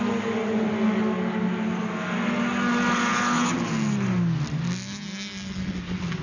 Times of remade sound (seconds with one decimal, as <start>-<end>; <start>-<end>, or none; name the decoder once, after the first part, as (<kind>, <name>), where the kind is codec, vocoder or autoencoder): none